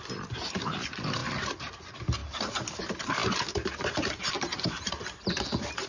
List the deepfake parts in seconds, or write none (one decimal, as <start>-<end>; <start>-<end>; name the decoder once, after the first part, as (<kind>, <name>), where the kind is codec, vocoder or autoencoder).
none